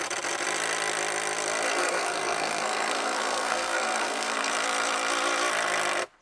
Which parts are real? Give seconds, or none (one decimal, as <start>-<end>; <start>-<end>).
0.0-1.7; 4.5-6.2